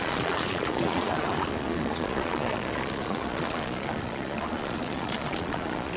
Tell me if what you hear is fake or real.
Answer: fake